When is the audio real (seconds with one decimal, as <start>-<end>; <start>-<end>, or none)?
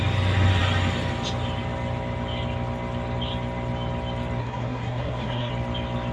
0.0-4.4; 5.5-6.1